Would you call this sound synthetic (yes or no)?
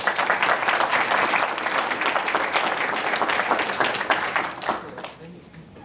no